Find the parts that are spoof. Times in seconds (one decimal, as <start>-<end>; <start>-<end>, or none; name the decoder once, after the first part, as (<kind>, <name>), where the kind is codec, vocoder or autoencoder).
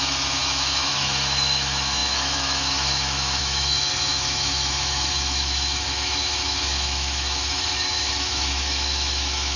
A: 0.0-9.6 (autoencoder, DAC-VAE)